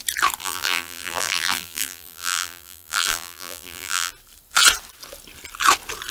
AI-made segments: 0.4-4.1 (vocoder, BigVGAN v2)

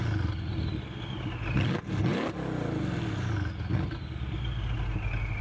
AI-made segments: none

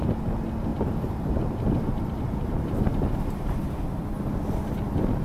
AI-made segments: 0.7-3.8 (vocoder, BigVGAN v2)